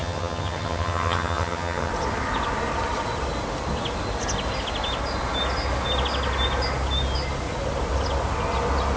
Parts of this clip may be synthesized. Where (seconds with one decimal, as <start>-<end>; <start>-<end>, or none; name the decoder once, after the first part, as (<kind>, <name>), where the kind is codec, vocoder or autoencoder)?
0.0-1.9 (vocoder, HiFi-GAN)